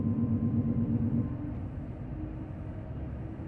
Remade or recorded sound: recorded